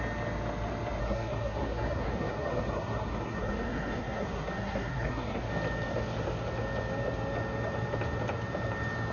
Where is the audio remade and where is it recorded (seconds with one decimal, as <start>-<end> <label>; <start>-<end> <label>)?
0.0-1.0 recorded; 1.0-5.5 remade; 5.5-9.1 recorded